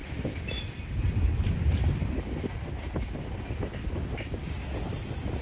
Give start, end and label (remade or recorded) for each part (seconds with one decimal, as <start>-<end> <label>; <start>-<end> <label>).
0.0-1.6 remade; 1.6-4.8 recorded; 4.8-5.4 remade